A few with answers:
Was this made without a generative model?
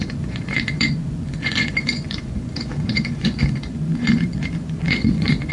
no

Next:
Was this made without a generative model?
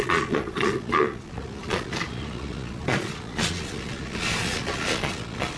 no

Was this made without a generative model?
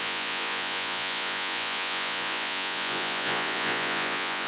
no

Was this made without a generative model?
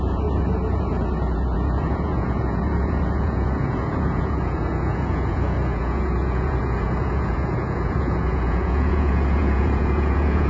no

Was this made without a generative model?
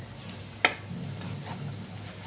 yes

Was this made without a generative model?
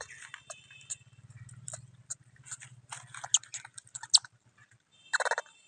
yes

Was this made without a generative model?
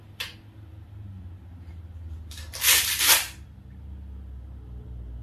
yes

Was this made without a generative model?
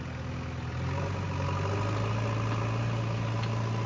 yes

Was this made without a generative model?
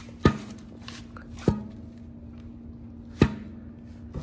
yes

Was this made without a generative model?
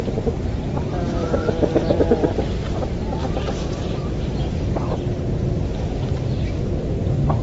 yes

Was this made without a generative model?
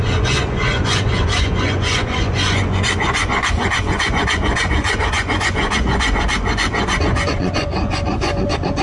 no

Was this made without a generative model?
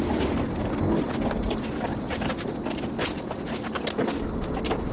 yes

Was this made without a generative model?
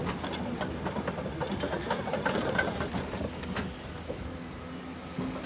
yes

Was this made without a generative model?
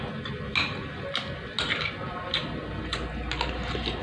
yes